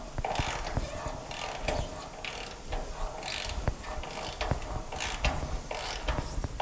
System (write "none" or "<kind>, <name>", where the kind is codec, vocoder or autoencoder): none